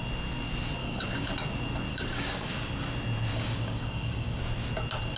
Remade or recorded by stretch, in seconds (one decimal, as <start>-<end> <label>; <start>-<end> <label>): 0.0-0.8 recorded; 0.8-1.3 remade; 1.3-1.9 recorded; 1.9-2.5 remade; 2.5-3.3 recorded; 3.3-4.4 remade; 4.4-5.2 recorded